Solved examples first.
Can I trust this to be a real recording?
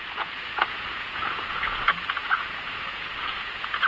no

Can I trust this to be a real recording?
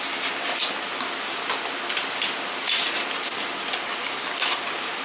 yes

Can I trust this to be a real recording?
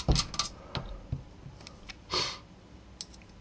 yes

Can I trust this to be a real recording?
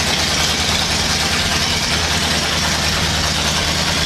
yes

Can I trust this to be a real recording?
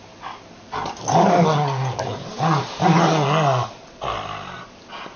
yes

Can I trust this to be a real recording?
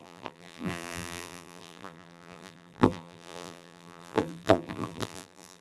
no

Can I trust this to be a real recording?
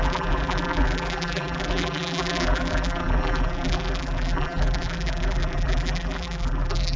no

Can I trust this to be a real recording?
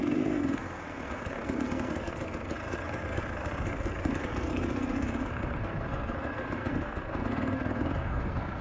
no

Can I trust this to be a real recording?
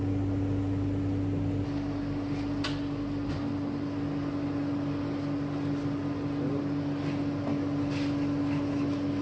yes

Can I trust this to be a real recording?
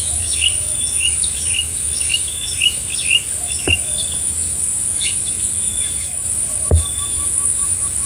no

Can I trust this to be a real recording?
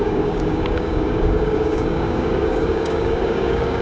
no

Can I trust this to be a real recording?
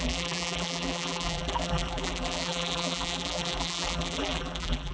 no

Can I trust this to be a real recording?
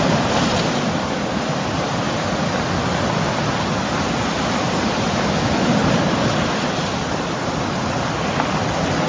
yes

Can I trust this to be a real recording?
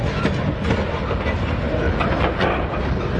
yes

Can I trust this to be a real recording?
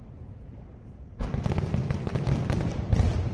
yes